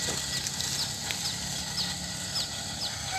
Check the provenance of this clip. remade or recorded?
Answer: recorded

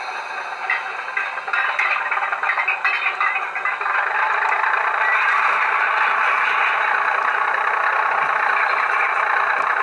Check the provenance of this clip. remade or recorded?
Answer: recorded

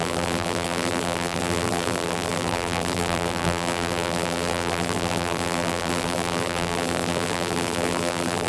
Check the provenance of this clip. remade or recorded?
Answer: remade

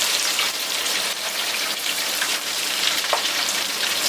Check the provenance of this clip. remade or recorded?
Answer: remade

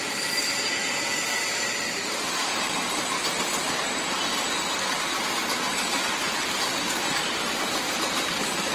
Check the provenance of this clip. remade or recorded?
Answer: remade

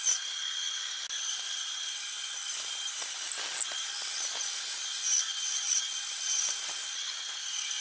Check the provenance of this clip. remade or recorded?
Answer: recorded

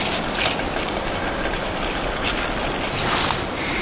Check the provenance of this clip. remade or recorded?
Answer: remade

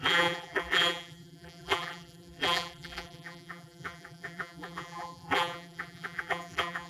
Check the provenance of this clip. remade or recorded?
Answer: remade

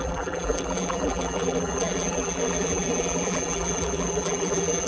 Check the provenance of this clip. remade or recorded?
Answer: remade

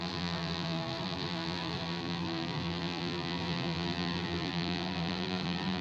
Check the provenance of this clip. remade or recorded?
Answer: remade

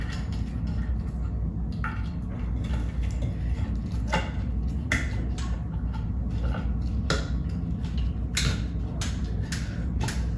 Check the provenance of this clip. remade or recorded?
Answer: recorded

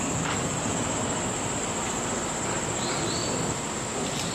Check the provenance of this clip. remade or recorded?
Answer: remade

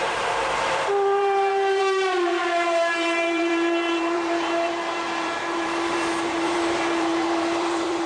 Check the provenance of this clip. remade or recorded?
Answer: remade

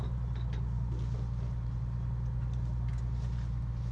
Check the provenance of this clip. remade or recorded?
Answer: recorded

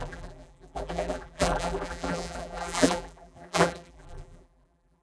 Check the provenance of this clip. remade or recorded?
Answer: remade